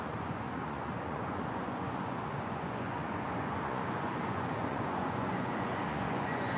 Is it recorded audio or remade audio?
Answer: remade